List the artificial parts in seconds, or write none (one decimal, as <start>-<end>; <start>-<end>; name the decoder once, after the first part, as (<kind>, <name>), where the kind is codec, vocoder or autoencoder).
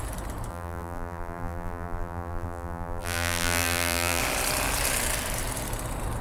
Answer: 0.5-4.2 (vocoder, BigVGAN v2)